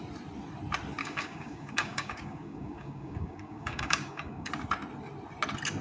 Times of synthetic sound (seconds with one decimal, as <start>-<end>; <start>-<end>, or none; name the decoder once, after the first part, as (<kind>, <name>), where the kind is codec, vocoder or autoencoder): 1.0-4.5 (codec, DAC)